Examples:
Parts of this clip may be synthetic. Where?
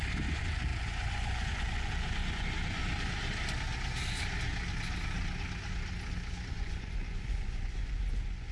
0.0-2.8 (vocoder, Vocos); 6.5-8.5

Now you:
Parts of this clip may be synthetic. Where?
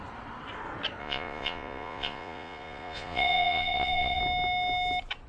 1.0-4.2 (vocoder, Vocos)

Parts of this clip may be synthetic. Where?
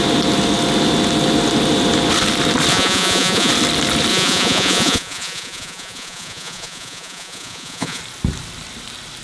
2.7-3.5 (vocoder, Vocos); 4.1-8.0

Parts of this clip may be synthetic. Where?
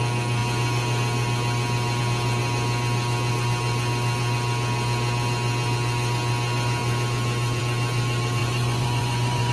8.4-9.5 (vocoder, Vocos)